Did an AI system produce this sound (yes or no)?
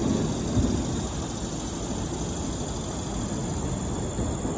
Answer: no